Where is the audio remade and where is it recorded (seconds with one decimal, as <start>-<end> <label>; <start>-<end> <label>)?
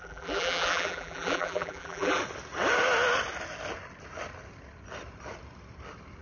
0.0-2.2 remade; 2.2-6.2 recorded